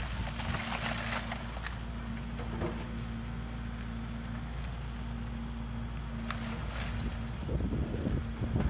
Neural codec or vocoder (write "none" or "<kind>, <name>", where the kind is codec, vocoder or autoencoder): none